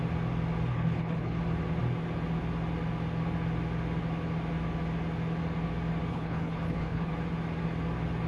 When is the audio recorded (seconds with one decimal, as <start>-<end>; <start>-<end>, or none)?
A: 0.0-0.7; 1.4-6.1; 7.1-8.3